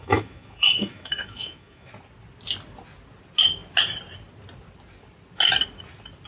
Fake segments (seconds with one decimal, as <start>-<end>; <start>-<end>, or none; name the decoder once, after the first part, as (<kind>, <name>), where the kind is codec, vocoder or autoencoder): 0.0-1.9 (autoencoder, DAC-VAE)

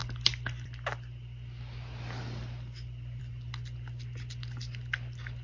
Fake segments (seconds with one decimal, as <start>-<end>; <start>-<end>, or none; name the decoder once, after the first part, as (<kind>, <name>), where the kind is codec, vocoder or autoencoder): none